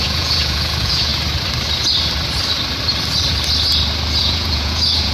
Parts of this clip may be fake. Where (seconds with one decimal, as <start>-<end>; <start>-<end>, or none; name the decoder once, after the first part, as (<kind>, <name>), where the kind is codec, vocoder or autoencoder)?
0.0-1.1 (vocoder, Vocos); 4.2-5.1